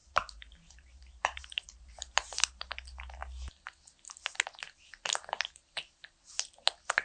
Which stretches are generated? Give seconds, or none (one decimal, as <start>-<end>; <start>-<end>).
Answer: 0.0-1.9